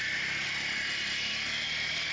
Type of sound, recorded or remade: recorded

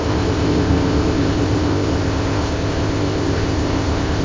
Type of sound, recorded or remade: remade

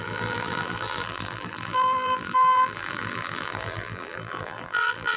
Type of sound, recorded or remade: remade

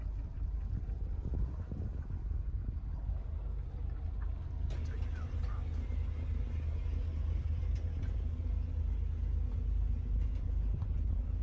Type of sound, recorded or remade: recorded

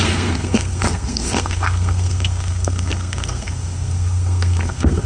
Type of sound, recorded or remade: remade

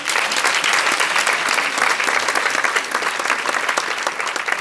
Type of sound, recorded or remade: recorded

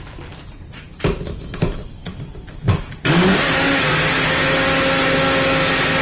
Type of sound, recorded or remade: recorded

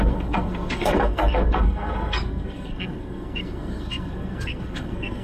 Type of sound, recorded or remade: remade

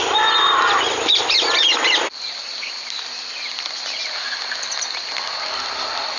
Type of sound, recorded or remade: recorded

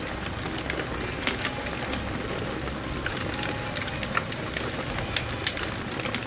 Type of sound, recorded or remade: recorded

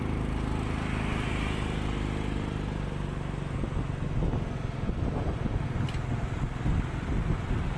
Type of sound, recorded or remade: recorded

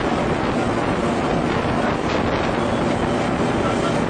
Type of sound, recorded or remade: recorded